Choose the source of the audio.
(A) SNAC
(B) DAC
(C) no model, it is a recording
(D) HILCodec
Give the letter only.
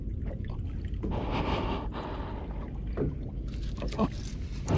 C